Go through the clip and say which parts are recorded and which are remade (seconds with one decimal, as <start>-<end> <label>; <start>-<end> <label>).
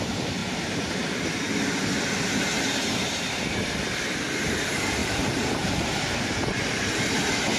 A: 0.0-0.4 recorded; 0.4-1.0 remade; 1.0-5.0 recorded; 5.0-7.6 remade